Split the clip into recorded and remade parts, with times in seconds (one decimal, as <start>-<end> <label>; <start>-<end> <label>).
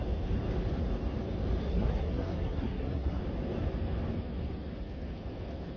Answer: 0.0-1.6 recorded; 1.6-3.2 remade; 3.2-5.8 recorded